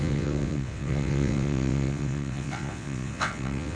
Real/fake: fake